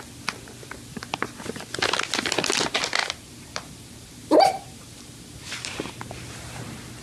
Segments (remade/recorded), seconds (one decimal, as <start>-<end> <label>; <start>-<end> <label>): 0.0-3.0 recorded; 3.0-5.9 remade; 5.9-7.0 recorded